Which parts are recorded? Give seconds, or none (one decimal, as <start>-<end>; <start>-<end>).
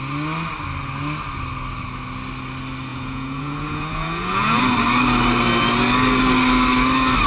0.0-2.9; 4.6-7.3